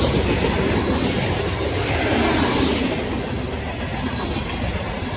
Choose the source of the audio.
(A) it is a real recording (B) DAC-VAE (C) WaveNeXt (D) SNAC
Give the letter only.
A